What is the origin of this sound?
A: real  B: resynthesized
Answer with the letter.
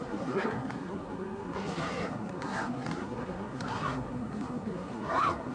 B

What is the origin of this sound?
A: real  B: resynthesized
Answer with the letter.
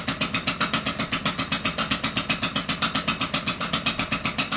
A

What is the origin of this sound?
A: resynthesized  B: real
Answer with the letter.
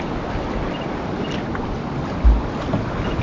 B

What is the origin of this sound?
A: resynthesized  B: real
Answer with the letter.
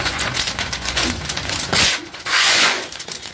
A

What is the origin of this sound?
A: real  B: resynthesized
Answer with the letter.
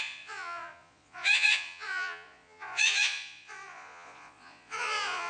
B